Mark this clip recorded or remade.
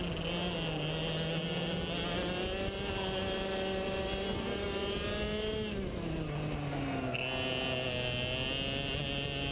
recorded